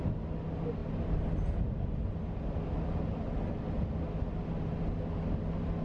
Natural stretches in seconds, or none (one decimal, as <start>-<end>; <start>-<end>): 0.0-5.8